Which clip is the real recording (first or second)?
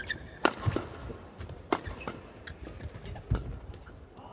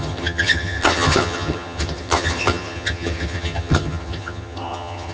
first